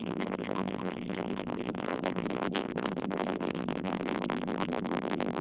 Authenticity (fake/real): fake